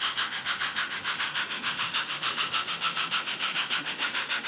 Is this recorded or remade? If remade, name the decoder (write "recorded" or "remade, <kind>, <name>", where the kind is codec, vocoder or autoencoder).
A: remade, autoencoder, DAC-VAE